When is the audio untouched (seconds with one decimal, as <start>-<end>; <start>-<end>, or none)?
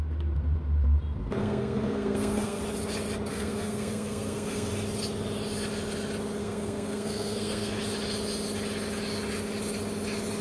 0.0-1.4; 2.6-3.3; 4.7-6.4; 7.8-10.4